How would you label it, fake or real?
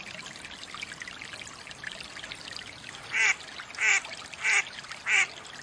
real